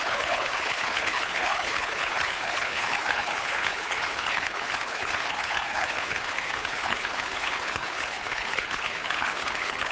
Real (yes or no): no